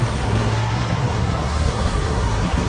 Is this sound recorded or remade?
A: remade